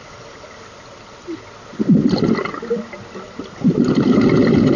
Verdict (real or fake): real